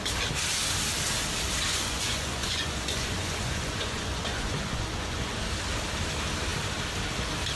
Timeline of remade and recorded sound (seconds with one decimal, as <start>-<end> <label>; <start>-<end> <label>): 0.0-1.7 recorded; 1.7-5.4 remade; 5.4-7.6 recorded